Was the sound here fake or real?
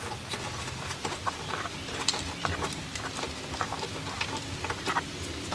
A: real